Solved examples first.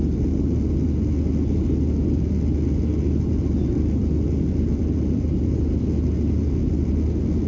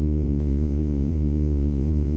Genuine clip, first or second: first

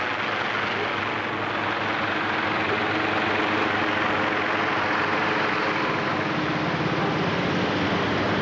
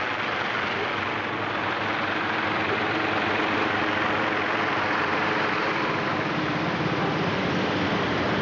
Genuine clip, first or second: first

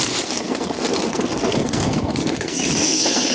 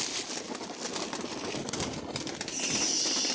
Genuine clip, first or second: second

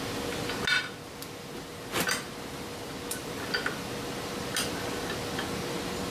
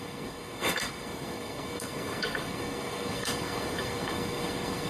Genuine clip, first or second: first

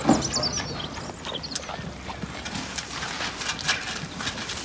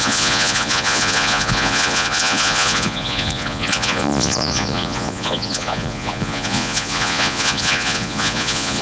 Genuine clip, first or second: first